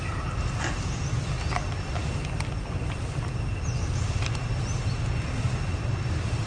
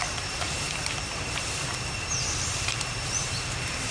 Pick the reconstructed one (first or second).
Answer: second